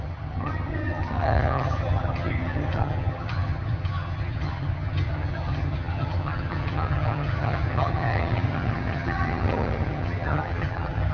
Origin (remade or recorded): remade